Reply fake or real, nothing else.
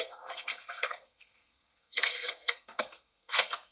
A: fake